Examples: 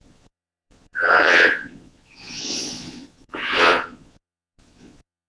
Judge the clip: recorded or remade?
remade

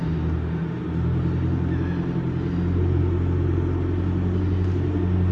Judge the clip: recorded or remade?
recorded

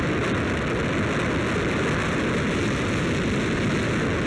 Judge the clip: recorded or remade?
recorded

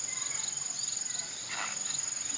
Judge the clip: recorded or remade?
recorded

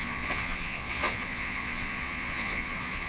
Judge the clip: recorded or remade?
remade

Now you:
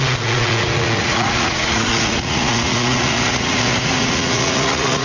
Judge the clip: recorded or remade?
remade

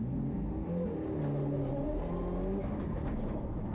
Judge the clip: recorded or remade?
recorded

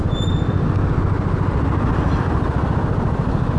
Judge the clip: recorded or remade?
recorded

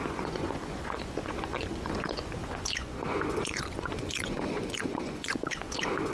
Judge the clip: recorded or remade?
remade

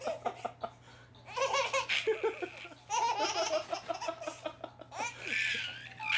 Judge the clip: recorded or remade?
recorded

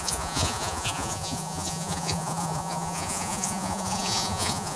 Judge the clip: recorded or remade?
remade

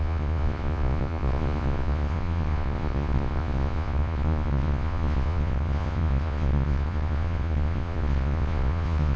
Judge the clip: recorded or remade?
remade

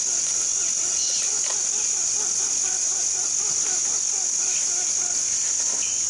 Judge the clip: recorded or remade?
recorded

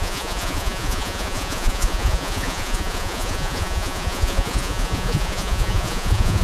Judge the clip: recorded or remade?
remade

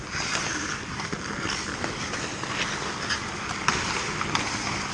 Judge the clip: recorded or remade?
recorded